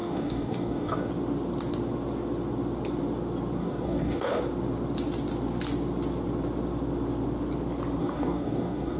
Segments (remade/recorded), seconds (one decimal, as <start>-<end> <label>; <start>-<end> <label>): 0.0-1.1 remade; 1.1-3.6 recorded; 3.6-4.4 remade; 4.4-8.0 recorded; 8.0-9.0 remade